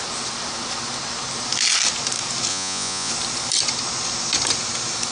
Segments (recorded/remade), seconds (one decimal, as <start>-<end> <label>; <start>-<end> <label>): 0.0-2.5 recorded; 2.5-3.1 remade; 3.1-5.1 recorded